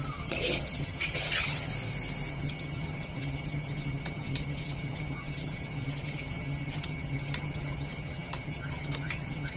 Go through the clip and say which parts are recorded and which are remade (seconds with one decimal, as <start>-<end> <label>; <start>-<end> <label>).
0.0-1.7 remade; 1.7-2.3 recorded; 2.3-9.6 remade